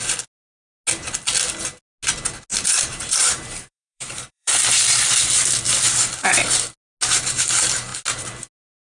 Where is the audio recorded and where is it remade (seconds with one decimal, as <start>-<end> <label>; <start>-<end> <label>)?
0.0-2.5 recorded; 2.5-5.1 remade; 5.1-8.9 recorded